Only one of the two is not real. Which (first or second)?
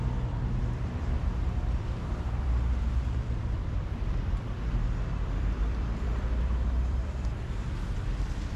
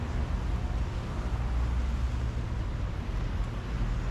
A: first